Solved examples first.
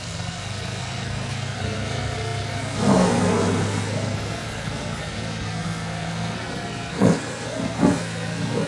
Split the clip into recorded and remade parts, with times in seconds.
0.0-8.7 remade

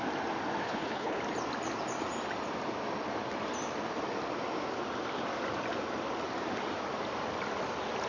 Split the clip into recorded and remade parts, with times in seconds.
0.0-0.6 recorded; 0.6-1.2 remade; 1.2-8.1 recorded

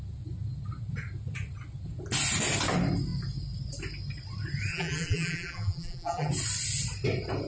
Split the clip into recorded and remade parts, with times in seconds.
0.0-4.7 recorded; 4.7-6.3 remade; 6.3-7.5 recorded

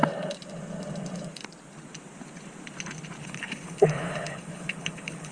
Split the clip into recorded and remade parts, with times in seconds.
0.0-3.2 recorded; 3.2-5.3 remade

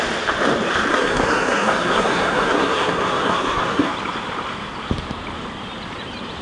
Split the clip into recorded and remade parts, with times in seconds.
0.0-0.9 recorded; 0.9-3.9 remade; 3.9-6.4 recorded